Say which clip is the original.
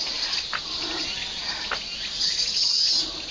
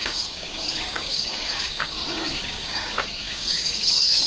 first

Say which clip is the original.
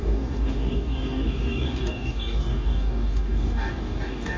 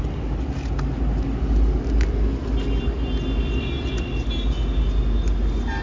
second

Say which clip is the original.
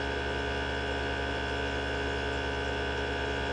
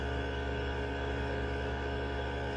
first